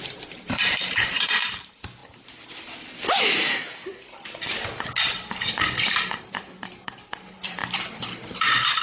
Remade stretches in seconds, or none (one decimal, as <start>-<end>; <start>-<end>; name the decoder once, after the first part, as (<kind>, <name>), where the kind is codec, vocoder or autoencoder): 0.0-2.0 (vocoder, BigVGAN v2); 6.3-8.8